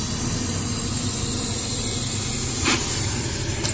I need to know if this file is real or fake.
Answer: real